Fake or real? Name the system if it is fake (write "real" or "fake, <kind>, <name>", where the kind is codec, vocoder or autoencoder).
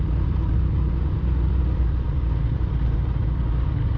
fake, vocoder, BigVGAN v2